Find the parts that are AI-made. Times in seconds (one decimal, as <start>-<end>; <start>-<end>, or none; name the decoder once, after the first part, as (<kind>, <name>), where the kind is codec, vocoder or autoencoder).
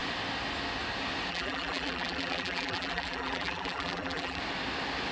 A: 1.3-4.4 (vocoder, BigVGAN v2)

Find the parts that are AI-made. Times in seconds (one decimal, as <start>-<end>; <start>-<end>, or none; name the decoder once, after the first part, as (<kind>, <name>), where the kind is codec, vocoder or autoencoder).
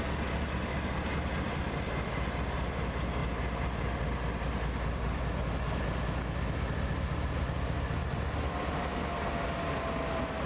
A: none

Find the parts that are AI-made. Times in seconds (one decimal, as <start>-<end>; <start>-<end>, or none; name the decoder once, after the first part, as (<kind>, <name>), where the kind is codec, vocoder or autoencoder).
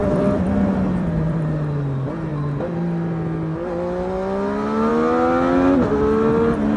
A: 0.0-1.5 (vocoder, BigVGAN v2)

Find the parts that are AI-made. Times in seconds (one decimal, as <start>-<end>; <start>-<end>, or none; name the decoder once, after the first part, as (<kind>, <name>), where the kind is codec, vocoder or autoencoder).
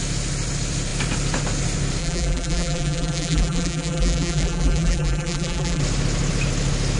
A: 2.0-5.8 (vocoder, BigVGAN v2)